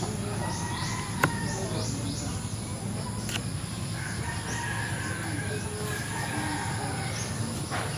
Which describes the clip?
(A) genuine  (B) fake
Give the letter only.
A